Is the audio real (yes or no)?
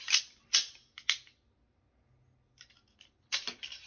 yes